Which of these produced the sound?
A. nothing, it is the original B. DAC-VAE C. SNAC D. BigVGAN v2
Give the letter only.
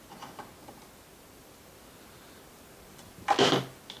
A